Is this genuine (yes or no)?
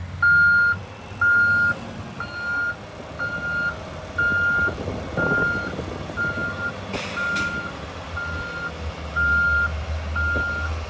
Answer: yes